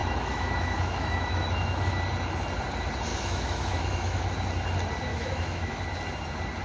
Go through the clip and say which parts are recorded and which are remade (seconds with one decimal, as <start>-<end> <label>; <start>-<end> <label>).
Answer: 0.0-1.9 remade; 1.9-3.1 recorded; 3.1-4.3 remade; 4.3-5.1 recorded; 5.1-5.8 remade; 5.8-6.6 recorded